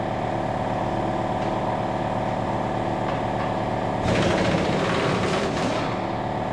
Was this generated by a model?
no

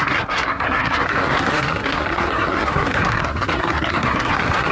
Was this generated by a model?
yes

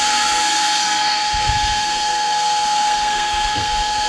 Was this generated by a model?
yes